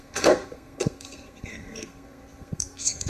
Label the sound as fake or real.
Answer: fake